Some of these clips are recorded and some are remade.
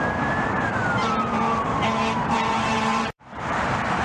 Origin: remade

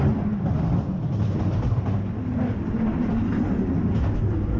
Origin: recorded